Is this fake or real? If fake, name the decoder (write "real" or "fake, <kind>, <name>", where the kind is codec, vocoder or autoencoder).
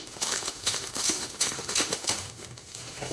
fake, autoencoder, DAC-VAE